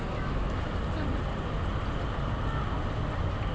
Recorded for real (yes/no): yes